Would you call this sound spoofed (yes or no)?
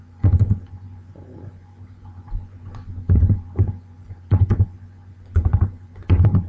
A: yes